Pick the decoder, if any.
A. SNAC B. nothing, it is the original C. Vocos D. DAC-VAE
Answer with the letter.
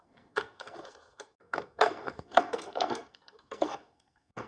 A